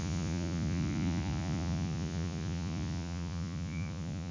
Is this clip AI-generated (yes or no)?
yes